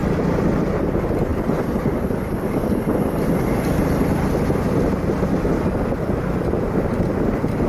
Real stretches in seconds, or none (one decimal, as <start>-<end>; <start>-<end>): 0.0-7.7